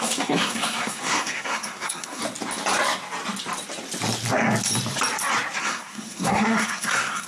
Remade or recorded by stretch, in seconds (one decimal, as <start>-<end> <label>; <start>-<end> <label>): 0.0-2.2 remade; 2.2-5.6 recorded; 5.6-7.3 remade